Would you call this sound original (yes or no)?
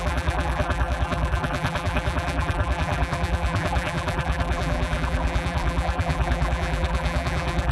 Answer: no